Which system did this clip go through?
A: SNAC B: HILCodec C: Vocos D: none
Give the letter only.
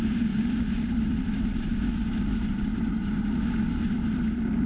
D